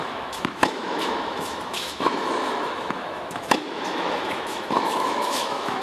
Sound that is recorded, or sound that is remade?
remade